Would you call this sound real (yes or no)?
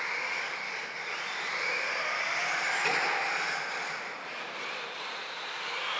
yes